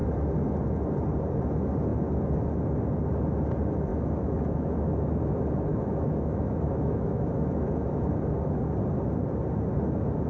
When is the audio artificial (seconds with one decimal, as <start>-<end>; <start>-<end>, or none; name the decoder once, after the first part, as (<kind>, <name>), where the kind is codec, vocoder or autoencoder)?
3.9-5.3 (autoencoder, DAC-VAE); 5.7-8.1